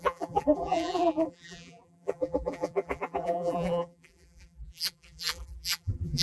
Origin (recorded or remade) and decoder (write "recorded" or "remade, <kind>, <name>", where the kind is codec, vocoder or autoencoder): remade, vocoder, BigVGAN v2